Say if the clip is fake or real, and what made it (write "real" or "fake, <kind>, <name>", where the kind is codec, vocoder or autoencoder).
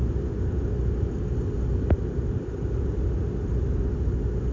real